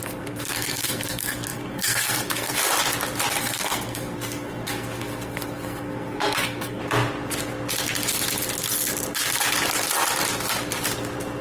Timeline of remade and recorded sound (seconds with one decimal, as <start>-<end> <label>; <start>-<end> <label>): 0.0-2.6 remade; 2.6-3.3 recorded; 3.3-6.8 remade; 6.8-11.4 recorded